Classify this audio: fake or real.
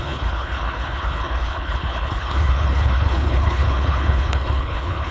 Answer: fake